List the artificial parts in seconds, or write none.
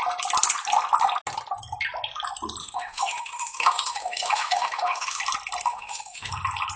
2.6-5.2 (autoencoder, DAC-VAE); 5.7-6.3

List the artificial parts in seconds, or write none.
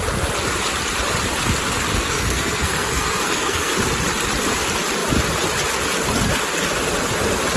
1.9-3.7 (codec, SNAC)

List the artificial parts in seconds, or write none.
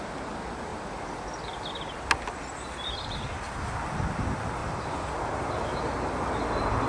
4.6-6.3 (vocoder, BigVGAN v2)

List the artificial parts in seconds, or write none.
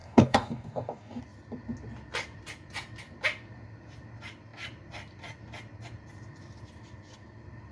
0.0-1.2 (codec, DAC)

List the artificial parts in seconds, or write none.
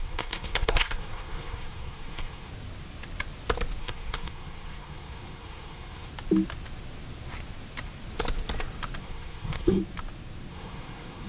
0.0-2.5 (codec, SNAC); 3.8-6.1; 9.0-9.8; 10.5-11.3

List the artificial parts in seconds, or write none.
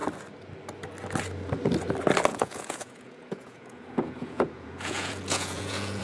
2.3-6.0 (vocoder, Vocos)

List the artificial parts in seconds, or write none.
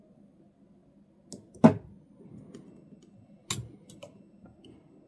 none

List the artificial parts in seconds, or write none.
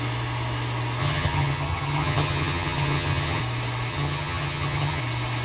1.0-3.4 (vocoder, HiFi-GAN); 3.9-5.0